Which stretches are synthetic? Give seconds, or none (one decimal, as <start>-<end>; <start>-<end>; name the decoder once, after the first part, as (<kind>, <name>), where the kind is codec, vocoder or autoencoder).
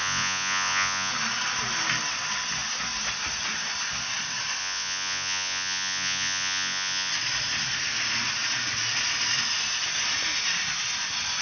0.0-1.1 (vocoder, Vocos); 4.6-7.1